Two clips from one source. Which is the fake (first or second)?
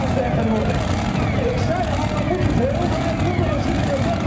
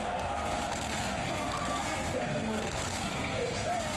second